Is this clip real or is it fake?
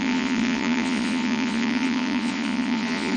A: fake